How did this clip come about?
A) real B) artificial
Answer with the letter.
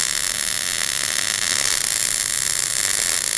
A